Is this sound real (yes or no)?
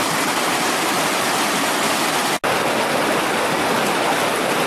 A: yes